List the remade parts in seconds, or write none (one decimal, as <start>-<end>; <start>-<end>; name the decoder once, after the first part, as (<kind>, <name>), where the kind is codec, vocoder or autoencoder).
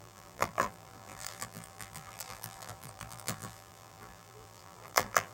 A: 0.0-5.3 (vocoder, BigVGAN v2)